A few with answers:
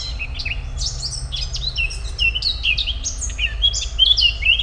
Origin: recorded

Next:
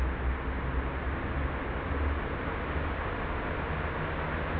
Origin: recorded